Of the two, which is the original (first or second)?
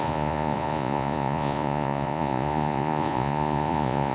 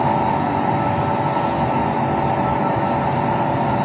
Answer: second